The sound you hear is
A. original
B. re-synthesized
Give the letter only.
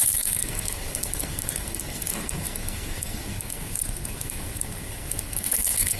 B